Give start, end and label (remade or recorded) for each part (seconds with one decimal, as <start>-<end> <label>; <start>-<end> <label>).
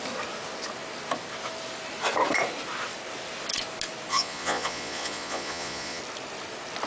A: 0.0-4.1 recorded; 4.1-6.0 remade; 6.0-6.9 recorded